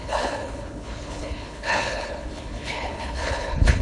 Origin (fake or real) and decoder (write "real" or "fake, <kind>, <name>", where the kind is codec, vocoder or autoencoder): fake, codec, HILCodec